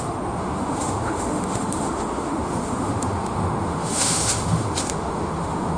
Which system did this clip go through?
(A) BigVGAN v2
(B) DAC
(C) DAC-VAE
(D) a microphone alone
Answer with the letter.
C